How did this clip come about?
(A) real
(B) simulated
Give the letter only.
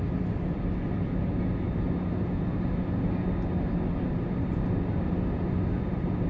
A